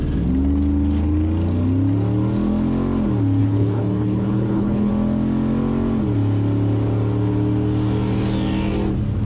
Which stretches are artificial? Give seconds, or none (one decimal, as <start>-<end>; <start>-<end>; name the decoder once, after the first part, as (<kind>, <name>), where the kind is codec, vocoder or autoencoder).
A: 3.4-4.9 (codec, HILCodec)